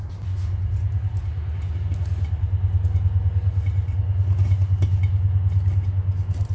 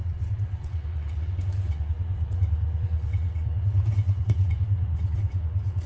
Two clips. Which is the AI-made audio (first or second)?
second